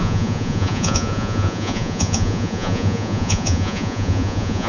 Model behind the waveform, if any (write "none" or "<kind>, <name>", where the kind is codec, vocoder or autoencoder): vocoder, Vocos